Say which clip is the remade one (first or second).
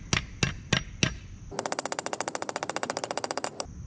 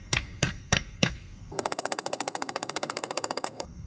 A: second